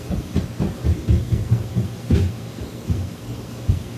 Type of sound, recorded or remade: remade